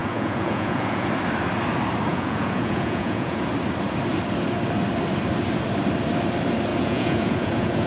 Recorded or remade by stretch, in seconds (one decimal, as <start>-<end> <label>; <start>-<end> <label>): 0.0-1.1 remade; 1.1-2.1 recorded; 2.1-3.5 remade; 3.5-6.7 recorded; 6.7-7.9 remade